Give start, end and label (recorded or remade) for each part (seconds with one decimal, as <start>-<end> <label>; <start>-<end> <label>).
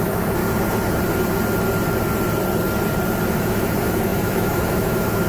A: 0.0-0.4 remade; 0.4-3.3 recorded; 3.3-5.3 remade